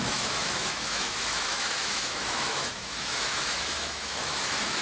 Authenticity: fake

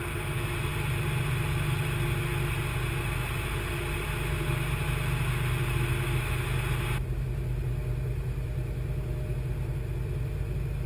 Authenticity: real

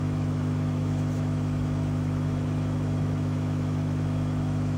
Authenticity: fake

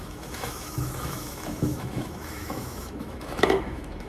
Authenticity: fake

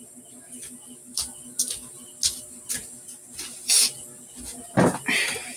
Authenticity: real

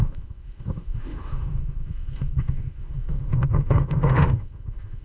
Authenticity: fake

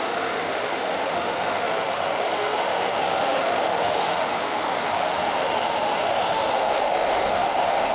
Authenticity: fake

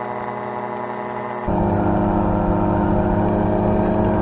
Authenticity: real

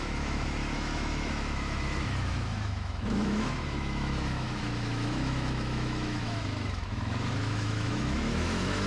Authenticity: fake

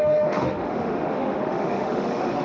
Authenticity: fake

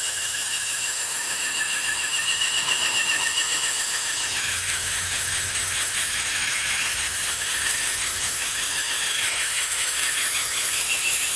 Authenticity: fake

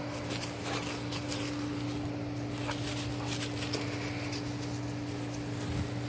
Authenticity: real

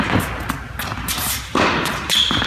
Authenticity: real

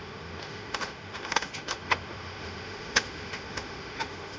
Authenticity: fake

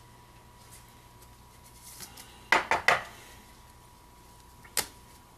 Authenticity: real